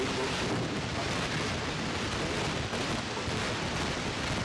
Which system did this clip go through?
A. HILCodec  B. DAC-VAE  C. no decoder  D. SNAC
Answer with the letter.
C